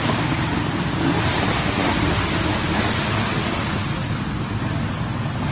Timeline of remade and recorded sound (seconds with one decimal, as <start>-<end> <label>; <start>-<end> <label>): 0.0-5.5 recorded